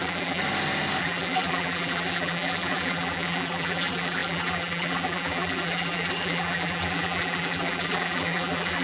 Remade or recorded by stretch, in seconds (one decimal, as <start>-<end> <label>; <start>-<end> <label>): 0.0-0.4 remade; 0.4-1.0 recorded; 1.0-8.8 remade